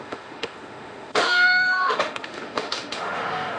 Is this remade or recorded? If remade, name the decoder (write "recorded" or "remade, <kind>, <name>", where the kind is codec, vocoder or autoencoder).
remade, autoencoder, DAC-VAE